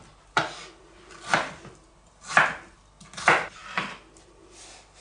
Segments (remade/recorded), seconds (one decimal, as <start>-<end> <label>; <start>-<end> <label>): 0.0-5.0 recorded